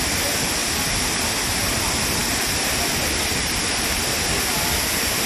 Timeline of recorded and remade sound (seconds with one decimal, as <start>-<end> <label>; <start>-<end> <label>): 0.0-5.3 recorded